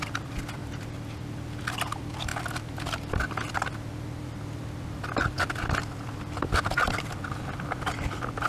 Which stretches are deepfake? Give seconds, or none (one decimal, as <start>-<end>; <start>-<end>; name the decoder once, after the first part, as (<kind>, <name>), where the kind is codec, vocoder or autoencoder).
0.0-2.3 (vocoder, BigVGAN v2); 5.9-8.5